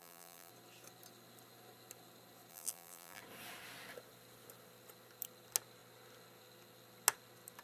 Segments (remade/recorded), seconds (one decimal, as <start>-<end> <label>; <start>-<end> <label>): 0.0-0.5 remade; 0.5-2.5 recorded; 2.5-3.2 remade; 3.2-7.6 recorded